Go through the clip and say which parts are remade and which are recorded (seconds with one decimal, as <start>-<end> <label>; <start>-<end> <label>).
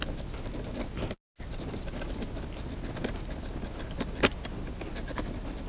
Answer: 0.0-5.7 recorded